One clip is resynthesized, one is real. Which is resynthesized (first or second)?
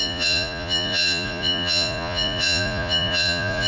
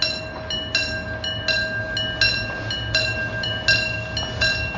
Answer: first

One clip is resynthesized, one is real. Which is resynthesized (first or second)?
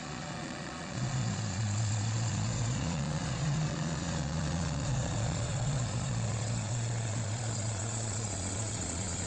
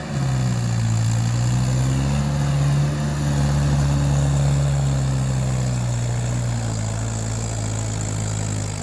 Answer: first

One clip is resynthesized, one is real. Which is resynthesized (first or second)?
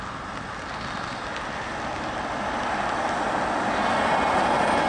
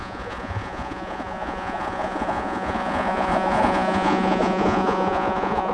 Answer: second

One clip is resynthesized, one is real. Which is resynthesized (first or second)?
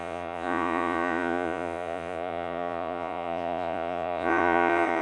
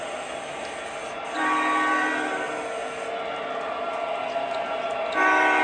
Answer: first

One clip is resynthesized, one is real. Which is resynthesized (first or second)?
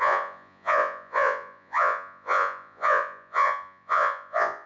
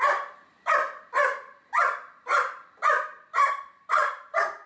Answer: first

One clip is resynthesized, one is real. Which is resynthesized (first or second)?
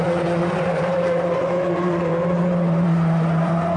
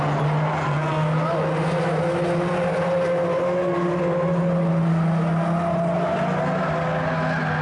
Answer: first